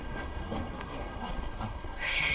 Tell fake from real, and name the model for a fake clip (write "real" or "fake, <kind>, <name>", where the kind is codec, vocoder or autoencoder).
fake, codec, SNAC